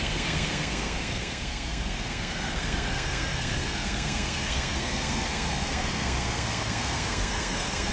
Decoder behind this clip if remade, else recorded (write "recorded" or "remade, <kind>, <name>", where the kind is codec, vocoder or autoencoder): remade, codec, SNAC